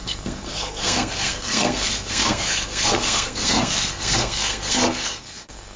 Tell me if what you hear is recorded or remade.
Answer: remade